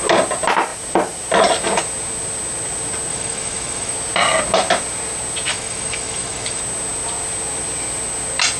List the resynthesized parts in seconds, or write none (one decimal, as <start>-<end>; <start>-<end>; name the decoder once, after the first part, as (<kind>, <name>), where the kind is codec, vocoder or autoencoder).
3.1-3.9 (autoencoder, DAC-VAE); 5.5-6.6